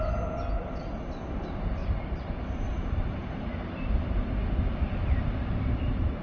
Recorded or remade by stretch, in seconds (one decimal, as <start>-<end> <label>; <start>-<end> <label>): 0.0-1.8 recorded; 1.8-5.5 remade; 5.5-6.2 recorded